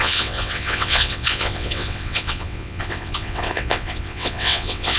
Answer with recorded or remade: remade